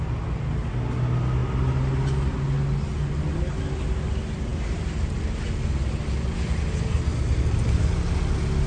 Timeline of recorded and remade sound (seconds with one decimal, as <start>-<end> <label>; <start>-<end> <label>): 0.0-8.7 recorded